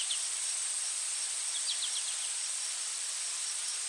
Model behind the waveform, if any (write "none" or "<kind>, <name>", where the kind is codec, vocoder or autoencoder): none